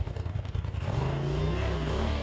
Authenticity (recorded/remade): remade